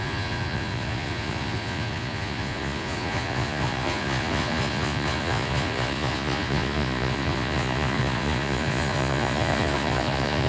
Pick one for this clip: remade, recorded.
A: remade